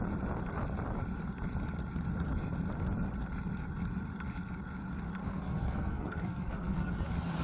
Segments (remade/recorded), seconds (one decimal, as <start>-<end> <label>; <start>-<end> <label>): 0.0-5.2 recorded; 5.2-6.9 remade; 6.9-7.4 recorded